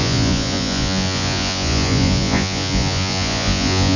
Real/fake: fake